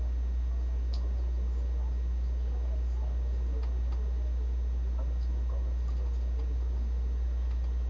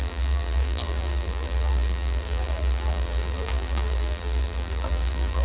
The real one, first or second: first